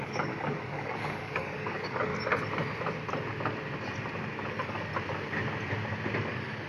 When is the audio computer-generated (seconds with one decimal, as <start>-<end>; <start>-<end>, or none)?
0.0-2.1; 4.5-4.9; 6.2-6.7